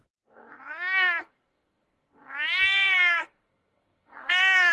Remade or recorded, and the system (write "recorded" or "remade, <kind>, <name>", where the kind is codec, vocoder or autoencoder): remade, codec, SNAC